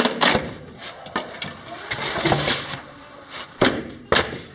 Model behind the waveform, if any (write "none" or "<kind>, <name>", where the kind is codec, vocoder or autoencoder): none